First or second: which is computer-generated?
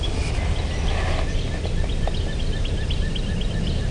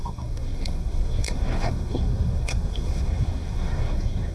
second